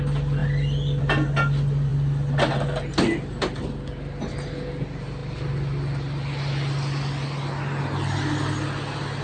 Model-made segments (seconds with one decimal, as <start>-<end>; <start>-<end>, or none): none